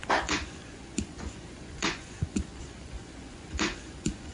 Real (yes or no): no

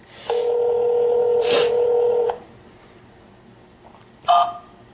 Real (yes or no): yes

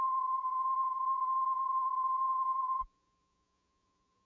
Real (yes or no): no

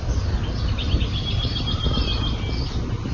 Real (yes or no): yes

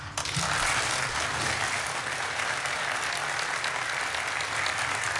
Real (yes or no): yes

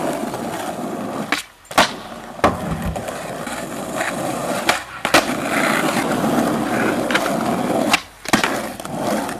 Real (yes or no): yes